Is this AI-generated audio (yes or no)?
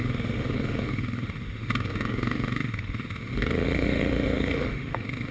yes